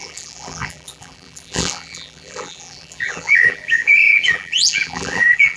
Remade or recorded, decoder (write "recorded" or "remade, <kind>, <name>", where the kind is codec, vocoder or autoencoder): remade, vocoder, BigVGAN v2